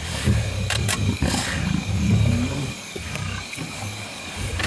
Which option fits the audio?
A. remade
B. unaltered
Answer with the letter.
A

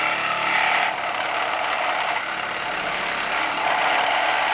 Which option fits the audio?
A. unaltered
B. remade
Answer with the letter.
A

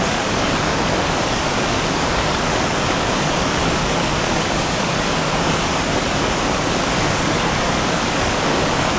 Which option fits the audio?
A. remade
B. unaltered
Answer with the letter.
A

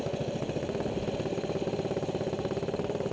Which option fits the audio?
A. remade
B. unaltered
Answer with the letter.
B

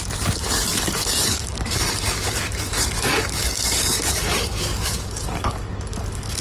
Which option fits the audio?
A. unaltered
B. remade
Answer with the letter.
B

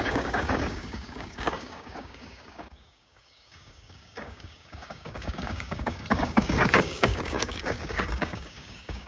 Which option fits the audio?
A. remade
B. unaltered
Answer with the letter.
A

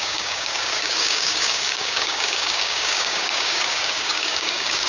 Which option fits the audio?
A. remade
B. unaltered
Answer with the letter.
A